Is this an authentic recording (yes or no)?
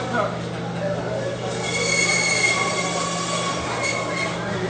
yes